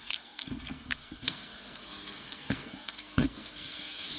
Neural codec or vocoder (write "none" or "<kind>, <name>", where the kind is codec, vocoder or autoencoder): codec, SNAC